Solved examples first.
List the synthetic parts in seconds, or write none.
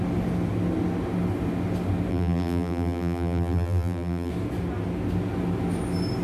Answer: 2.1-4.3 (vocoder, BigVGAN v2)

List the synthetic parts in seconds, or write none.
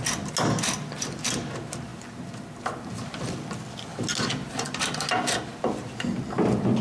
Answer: none